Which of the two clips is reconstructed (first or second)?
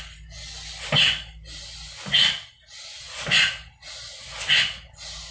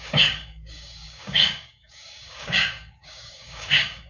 second